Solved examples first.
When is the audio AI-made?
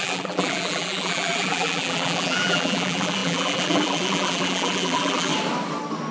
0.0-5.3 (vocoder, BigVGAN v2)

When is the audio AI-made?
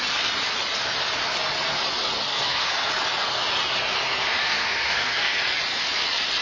2.3-2.9 (codec, SNAC); 4.4-5.4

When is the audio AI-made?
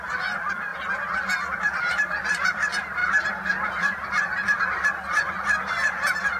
0.0-0.7 (vocoder, BigVGAN v2); 1.6-6.4